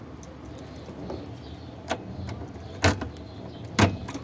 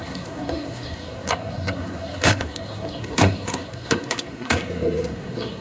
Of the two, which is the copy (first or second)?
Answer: second